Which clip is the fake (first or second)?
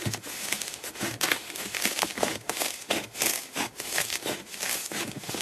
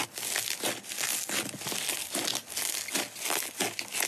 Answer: first